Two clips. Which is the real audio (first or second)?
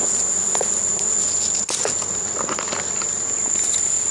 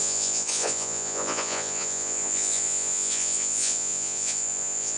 first